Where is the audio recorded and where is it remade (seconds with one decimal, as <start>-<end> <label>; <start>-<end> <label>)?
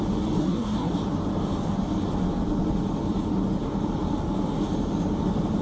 0.0-0.4 recorded; 0.4-0.9 remade; 0.9-5.6 recorded